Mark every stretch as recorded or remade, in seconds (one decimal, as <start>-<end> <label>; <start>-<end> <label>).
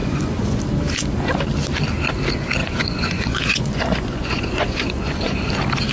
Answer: 0.0-0.6 remade; 0.6-2.6 recorded; 2.6-5.5 remade; 5.5-5.9 recorded